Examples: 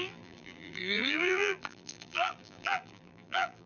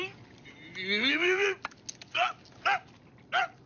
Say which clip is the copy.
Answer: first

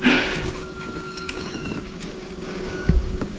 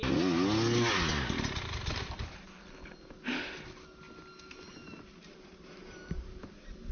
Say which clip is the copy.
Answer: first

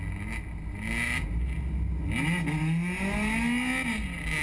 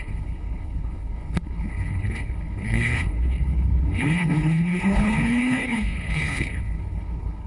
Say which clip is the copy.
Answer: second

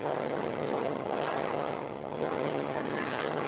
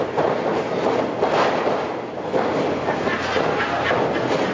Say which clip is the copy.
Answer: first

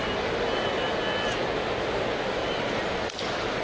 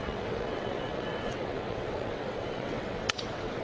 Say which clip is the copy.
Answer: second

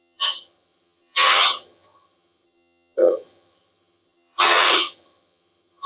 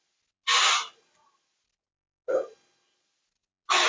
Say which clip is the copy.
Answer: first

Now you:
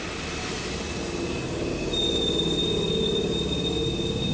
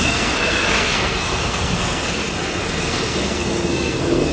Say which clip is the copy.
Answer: second